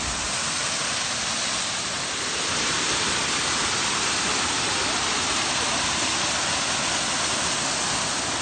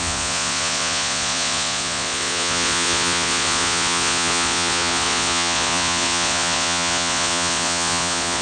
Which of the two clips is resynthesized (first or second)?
second